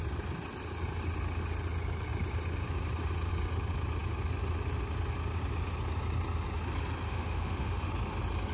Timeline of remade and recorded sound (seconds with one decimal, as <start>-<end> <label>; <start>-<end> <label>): 0.0-7.1 recorded; 7.1-7.9 remade; 7.9-8.5 recorded